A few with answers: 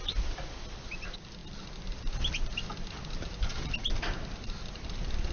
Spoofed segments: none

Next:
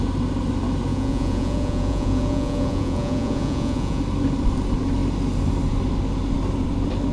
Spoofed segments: 0.9-4.0

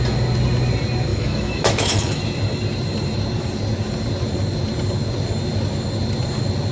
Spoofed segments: 1.1-2.2

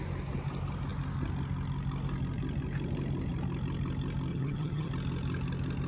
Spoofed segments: 4.3-4.9